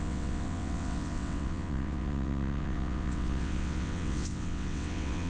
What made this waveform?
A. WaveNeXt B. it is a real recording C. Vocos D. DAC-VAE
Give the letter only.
A